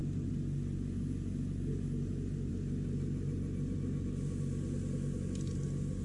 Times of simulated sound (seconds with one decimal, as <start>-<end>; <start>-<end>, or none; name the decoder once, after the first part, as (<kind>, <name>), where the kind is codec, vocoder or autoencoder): none